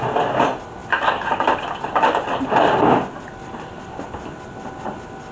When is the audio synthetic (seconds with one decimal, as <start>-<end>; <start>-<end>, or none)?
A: none